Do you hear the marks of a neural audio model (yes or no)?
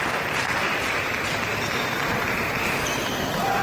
no